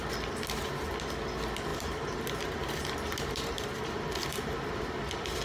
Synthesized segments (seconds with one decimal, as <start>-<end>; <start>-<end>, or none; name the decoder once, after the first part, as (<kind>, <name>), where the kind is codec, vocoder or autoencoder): 1.7-4.9 (vocoder, BigVGAN v2)